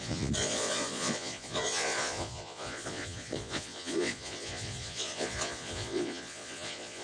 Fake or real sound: fake